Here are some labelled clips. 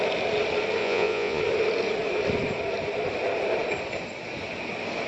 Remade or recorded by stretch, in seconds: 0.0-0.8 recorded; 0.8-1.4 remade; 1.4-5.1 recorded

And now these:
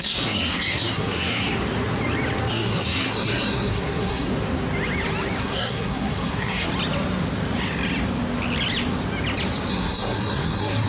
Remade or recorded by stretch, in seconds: 0.0-1.5 remade; 1.5-2.5 recorded; 2.5-4.3 remade; 4.3-5.4 recorded; 5.4-6.7 remade; 6.7-9.7 recorded; 9.7-10.9 remade

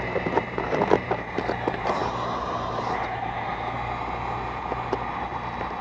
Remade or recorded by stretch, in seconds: 0.0-3.5 remade; 3.5-5.8 recorded